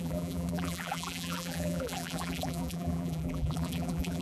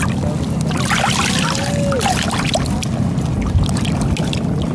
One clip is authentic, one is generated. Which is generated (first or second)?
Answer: first